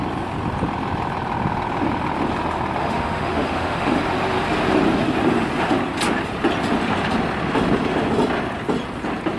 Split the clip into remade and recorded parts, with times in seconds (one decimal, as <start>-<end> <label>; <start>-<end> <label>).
0.0-2.8 recorded; 2.8-4.0 remade; 4.0-9.4 recorded